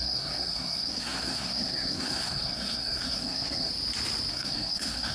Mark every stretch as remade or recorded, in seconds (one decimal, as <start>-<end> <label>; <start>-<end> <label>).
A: 0.0-3.7 remade; 3.7-4.3 recorded; 4.3-5.1 remade